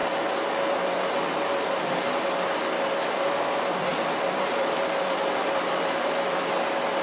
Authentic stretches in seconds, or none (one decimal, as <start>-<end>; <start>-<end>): 0.0-3.9; 6.5-7.0